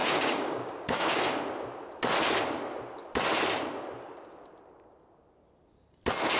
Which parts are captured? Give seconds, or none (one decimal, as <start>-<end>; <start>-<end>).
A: 1.4-6.4